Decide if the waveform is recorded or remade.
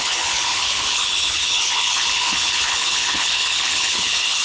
remade